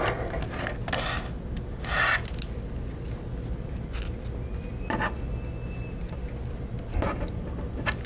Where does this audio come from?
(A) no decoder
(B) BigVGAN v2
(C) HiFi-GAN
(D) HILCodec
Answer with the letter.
A